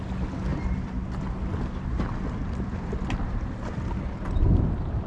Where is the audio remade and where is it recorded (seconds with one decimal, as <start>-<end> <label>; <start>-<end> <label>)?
0.0-5.1 recorded